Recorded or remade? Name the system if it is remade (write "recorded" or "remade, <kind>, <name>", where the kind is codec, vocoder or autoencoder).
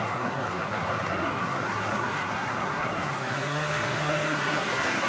remade, codec, SNAC